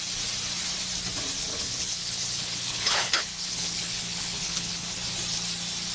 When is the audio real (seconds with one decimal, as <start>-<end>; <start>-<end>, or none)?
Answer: 0.0-1.5; 5.0-5.9